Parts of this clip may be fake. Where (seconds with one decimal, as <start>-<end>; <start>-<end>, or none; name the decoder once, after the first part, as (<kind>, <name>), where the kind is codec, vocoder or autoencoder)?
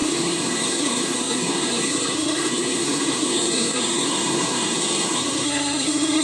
0.0-6.2 (codec, SNAC)